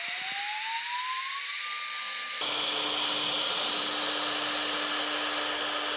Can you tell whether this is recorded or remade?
recorded